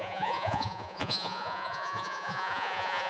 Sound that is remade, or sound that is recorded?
remade